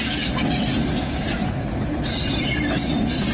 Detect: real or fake real